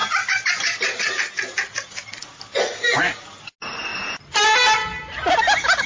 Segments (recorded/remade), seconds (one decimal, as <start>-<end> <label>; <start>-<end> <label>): 0.0-5.9 recorded

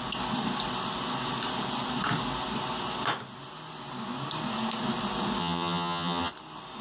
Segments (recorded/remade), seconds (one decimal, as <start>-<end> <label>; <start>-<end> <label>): 0.0-5.4 recorded; 5.4-6.3 remade; 6.3-6.8 recorded